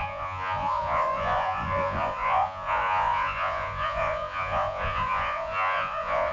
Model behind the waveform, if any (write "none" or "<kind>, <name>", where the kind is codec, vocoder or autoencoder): vocoder, Vocos